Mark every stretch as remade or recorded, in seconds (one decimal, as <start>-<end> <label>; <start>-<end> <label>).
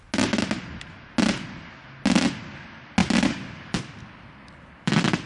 0.0-3.0 recorded; 3.0-5.3 remade